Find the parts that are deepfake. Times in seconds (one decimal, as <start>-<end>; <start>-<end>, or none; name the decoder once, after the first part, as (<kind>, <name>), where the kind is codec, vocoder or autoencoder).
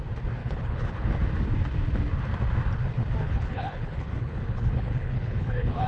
0.4-1.1 (codec, HILCodec); 3.2-5.9